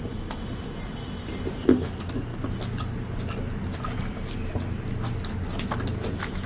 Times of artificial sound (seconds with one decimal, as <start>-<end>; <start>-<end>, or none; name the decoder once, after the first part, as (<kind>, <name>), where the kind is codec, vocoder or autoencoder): none